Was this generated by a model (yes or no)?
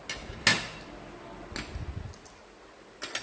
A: no